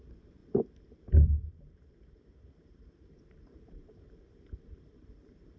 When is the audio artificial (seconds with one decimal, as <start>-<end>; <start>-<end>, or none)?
0.0-0.4; 0.9-5.6